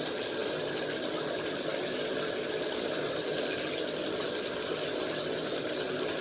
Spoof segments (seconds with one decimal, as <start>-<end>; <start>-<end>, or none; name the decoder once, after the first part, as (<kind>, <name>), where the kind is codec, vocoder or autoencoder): none